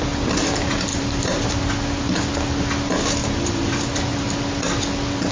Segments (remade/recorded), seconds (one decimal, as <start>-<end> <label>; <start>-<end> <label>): 0.0-0.9 recorded; 0.9-1.6 remade; 1.6-3.2 recorded; 3.2-4.2 remade; 4.2-5.3 recorded